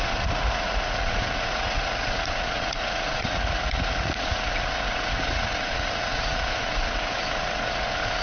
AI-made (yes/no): yes